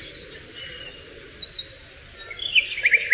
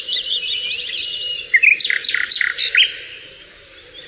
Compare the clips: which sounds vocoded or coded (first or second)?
second